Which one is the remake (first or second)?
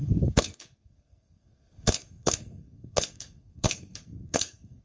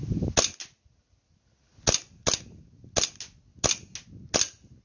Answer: first